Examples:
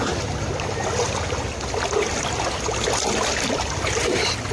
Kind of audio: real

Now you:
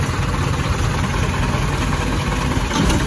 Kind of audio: real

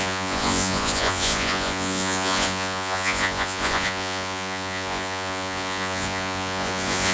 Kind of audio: fake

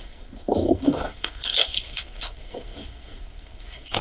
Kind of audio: fake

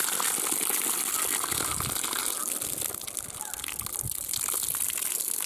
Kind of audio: real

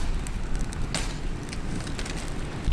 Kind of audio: real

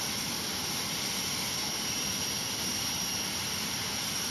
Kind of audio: real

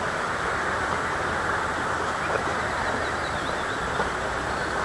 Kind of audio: real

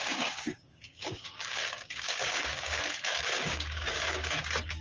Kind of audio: fake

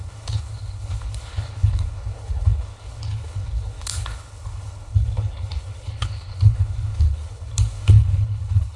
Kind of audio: fake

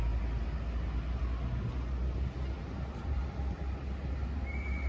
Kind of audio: real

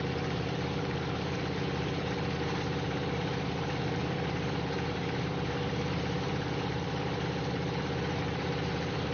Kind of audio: fake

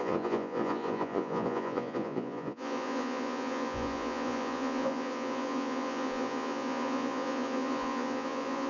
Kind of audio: fake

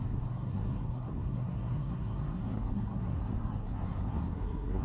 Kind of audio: fake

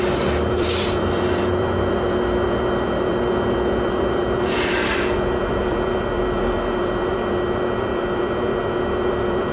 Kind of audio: fake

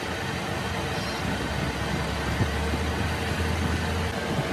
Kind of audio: real